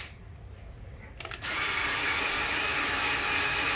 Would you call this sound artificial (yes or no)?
no